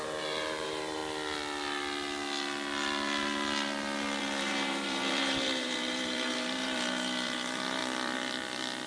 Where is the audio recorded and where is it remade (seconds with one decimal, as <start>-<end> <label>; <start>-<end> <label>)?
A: 0.0-1.0 remade; 1.0-4.2 recorded; 4.2-7.8 remade; 7.8-8.9 recorded